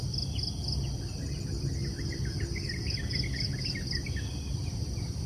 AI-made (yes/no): no